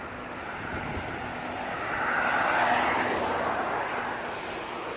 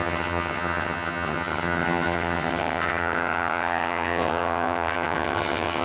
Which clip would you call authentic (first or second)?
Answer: first